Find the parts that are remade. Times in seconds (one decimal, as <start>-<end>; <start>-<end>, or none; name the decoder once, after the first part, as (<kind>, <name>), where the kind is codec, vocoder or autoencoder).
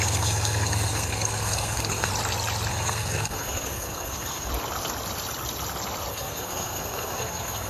0.0-2.1 (codec, SNAC); 2.7-4.5; 6.1-7.7